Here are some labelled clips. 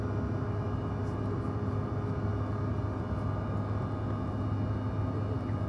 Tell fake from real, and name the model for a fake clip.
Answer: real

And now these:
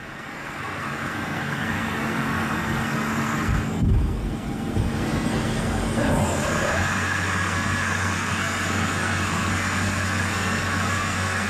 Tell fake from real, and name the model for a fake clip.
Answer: fake, codec, SNAC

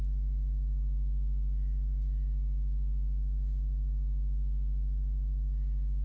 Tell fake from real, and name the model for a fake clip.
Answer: real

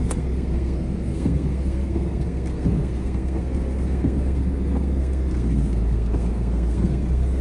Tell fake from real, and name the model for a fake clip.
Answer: fake, codec, SNAC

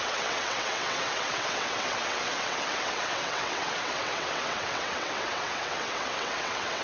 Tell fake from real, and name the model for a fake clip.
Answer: fake, vocoder, WaveNeXt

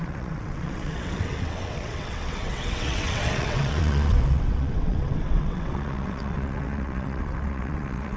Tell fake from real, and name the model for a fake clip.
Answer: fake, vocoder, WaveNeXt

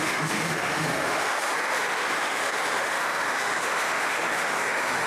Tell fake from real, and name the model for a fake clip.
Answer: fake, autoencoder, DAC-VAE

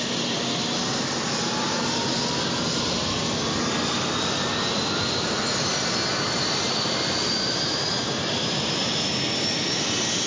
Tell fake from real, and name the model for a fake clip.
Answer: real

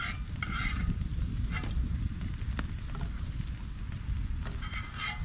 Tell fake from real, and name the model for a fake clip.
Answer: real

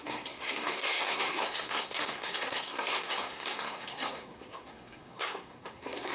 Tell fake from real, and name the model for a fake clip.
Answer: fake, codec, SNAC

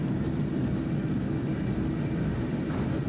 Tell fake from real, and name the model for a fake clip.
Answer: real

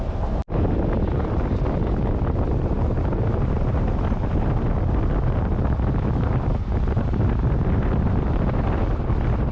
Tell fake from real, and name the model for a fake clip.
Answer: real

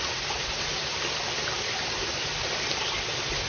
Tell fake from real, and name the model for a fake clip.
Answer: real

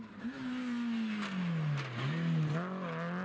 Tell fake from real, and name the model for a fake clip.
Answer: real